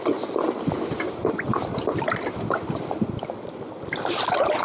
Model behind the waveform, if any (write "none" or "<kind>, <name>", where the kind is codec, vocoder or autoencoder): none